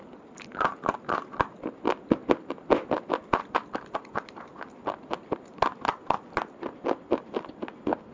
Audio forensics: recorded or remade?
recorded